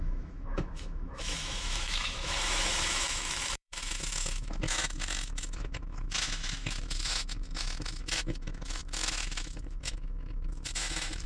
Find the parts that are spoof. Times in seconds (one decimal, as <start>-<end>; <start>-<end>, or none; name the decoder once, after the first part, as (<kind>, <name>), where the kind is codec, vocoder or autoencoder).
0.0-11.3 (autoencoder, DAC-VAE)